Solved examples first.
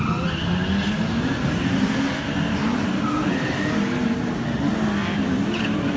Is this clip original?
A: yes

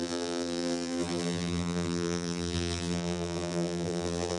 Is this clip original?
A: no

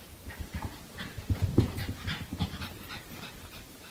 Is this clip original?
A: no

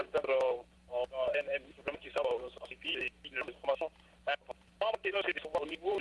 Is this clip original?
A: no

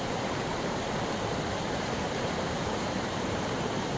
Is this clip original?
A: no